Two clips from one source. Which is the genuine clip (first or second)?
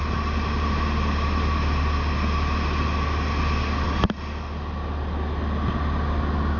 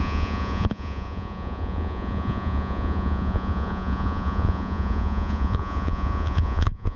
first